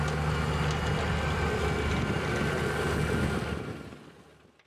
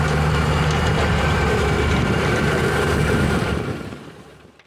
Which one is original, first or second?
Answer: first